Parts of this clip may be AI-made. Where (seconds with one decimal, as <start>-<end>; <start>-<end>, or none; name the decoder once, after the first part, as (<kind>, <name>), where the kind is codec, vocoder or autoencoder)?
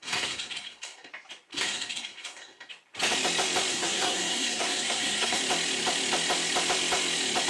0.0-1.1 (codec, SNAC); 1.5-2.7; 3.7-5.4